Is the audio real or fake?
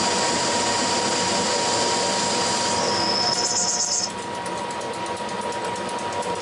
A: real